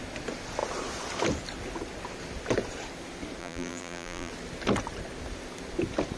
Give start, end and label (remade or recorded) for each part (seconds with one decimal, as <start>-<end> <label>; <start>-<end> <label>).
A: 0.0-3.4 recorded; 3.4-4.3 remade; 4.3-6.2 recorded